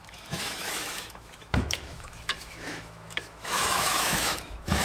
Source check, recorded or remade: remade